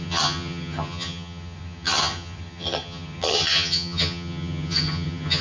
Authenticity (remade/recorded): remade